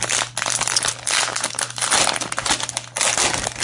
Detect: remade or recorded recorded